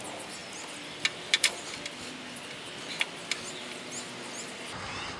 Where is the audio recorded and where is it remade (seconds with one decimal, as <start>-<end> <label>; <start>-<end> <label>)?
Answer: 0.0-5.2 recorded